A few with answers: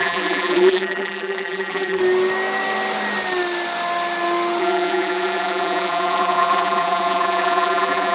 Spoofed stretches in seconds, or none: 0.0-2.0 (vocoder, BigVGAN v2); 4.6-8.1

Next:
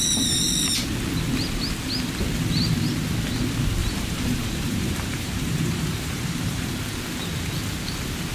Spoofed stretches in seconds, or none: 3.8-6.6 (vocoder, BigVGAN v2)

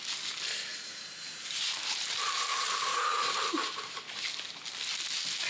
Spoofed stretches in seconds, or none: 0.7-4.0 (vocoder, BigVGAN v2)

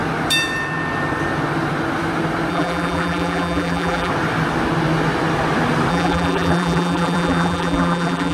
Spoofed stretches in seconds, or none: 2.5-4.1 (vocoder, BigVGAN v2); 5.9-8.3

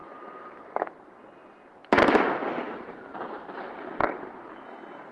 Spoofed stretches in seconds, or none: 0.0-0.9 (vocoder, BigVGAN v2); 1.4-4.5